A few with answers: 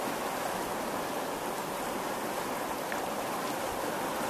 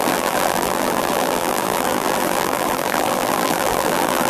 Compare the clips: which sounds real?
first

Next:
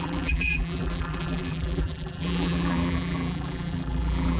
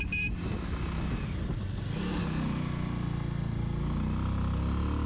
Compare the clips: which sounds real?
second